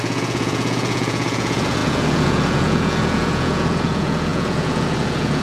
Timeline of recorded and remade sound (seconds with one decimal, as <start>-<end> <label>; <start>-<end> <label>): 0.0-5.4 remade